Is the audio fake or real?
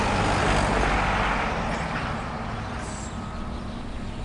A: real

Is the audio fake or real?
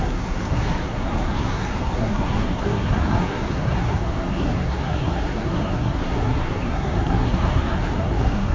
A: fake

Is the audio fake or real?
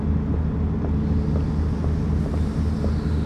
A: real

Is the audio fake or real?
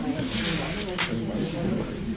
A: real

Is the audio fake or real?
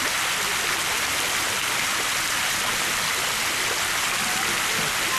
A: real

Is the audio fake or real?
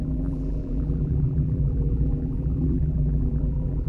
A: fake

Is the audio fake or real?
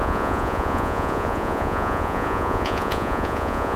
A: fake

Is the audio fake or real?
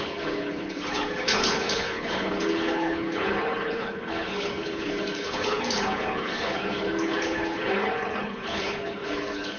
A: fake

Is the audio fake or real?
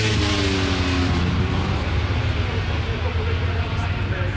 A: real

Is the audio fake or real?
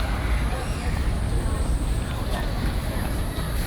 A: fake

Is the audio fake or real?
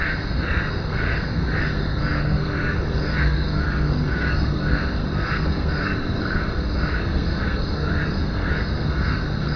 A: fake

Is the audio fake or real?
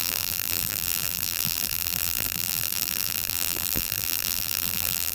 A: fake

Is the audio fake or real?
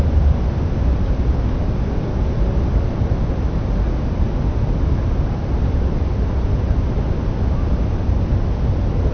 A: real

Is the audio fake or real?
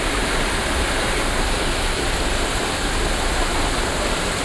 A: real